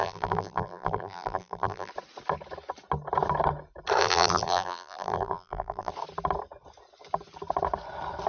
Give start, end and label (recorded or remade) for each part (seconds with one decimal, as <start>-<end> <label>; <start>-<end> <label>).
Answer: 0.0-1.9 remade; 1.9-4.0 recorded; 4.0-5.9 remade; 5.9-8.3 recorded